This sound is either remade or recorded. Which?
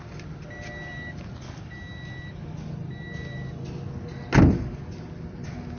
recorded